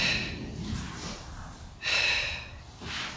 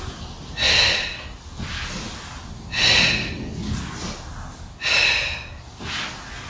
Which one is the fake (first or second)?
first